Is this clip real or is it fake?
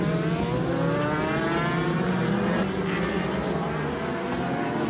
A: real